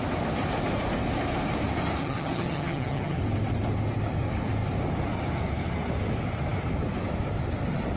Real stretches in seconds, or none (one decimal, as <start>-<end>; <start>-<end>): 0.0-2.0; 3.2-8.0